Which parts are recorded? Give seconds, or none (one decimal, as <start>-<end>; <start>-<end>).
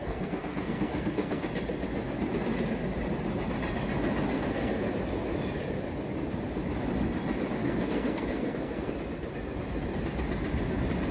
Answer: 1.4-4.3; 4.9-7.6; 8.9-11.1